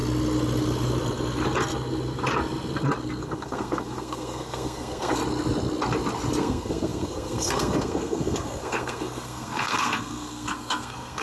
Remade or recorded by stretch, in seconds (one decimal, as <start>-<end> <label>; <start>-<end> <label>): 0.0-3.2 recorded; 3.2-5.2 remade; 5.2-6.4 recorded; 6.4-11.2 remade